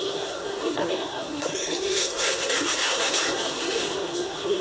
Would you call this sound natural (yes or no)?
no